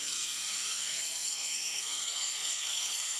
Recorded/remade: remade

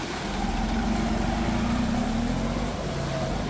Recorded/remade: recorded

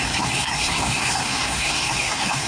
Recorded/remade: remade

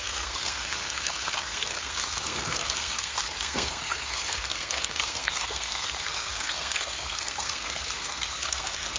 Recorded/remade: remade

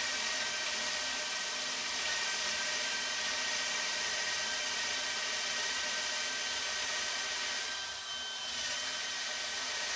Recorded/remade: recorded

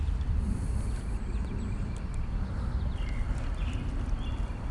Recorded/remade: recorded